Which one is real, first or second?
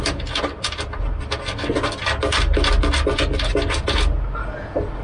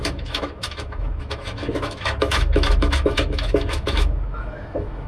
first